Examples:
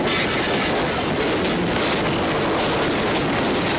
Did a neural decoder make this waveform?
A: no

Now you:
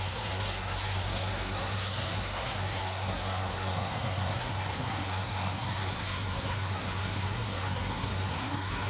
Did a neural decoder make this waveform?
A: yes